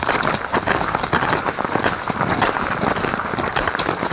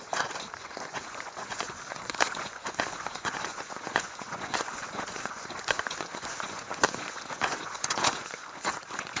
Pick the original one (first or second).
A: first